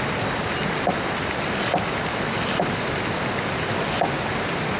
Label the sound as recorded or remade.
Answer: recorded